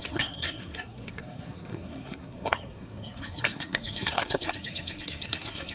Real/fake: fake